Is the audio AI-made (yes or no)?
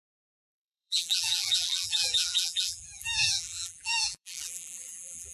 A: yes